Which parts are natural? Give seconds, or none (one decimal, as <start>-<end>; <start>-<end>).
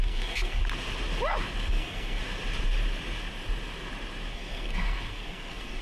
0.6-1.7; 2.2-4.3